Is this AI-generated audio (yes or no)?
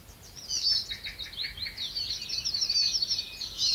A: no